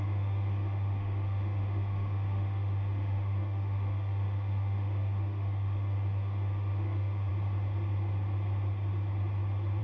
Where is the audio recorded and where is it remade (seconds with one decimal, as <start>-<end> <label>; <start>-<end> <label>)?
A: 0.0-7.3 remade; 7.3-9.8 recorded